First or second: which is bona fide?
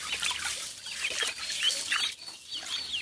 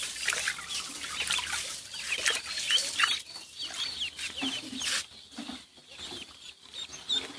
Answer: second